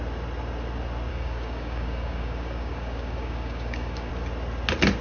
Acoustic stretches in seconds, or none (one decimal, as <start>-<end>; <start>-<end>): 0.0-1.1; 4.1-5.0